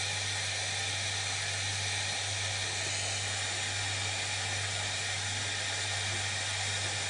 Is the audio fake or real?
real